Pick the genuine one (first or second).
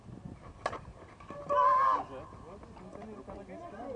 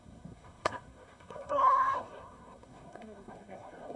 first